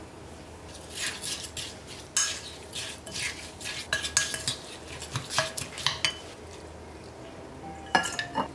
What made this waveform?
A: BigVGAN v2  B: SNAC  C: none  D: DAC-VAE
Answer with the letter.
C